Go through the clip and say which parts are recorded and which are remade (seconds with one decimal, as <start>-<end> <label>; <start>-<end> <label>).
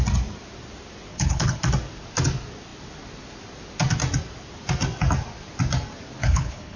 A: 0.0-1.1 recorded; 1.1-1.6 remade; 1.6-6.2 recorded; 6.2-6.8 remade